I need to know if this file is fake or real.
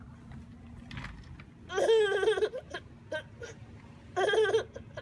real